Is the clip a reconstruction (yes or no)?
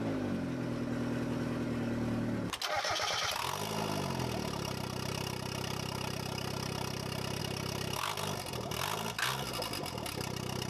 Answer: no